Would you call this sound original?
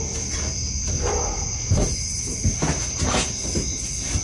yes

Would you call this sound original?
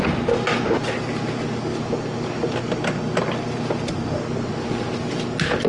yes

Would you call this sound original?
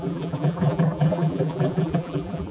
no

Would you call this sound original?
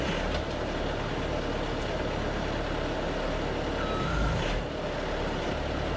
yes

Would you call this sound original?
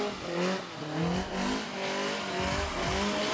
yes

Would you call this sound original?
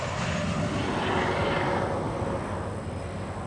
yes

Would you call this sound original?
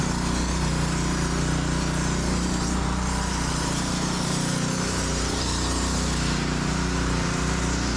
no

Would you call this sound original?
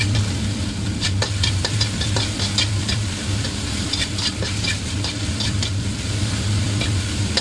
no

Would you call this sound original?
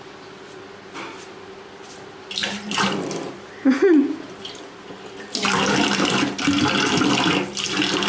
yes